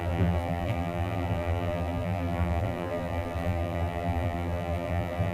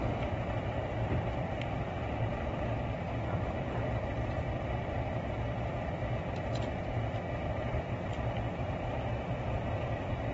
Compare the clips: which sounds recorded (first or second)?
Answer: second